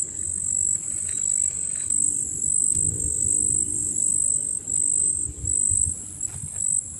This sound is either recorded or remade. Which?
recorded